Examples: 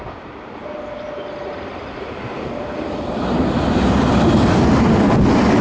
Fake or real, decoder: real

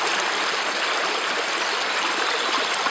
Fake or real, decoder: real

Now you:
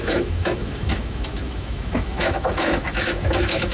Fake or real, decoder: fake, autoencoder, DAC-VAE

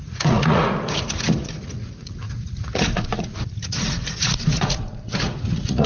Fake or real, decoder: fake, vocoder, Vocos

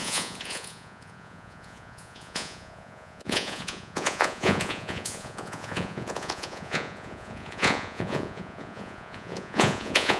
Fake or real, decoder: fake, vocoder, Vocos